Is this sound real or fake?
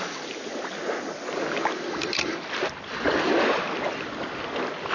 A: real